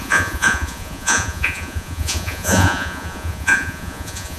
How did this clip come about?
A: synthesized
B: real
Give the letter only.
A